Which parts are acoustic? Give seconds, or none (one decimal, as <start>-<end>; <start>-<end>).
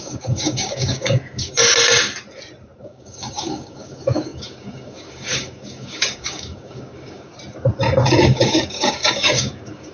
1.6-2.8; 7.3-8.2